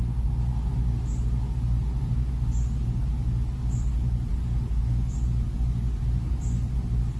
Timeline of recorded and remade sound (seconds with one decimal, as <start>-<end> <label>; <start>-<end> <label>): 0.0-7.2 recorded